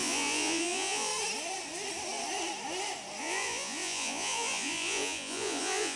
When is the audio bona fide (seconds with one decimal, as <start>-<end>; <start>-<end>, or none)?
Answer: 1.1-3.2